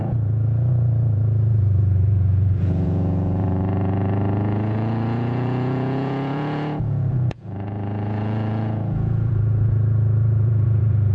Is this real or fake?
fake